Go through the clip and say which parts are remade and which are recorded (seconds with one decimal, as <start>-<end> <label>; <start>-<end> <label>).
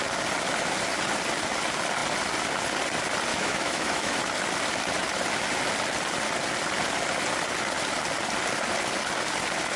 0.0-3.3 recorded; 3.3-4.2 remade; 4.2-9.8 recorded